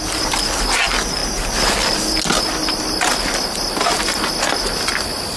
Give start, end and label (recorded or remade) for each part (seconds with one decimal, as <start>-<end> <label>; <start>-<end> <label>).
0.0-5.4 recorded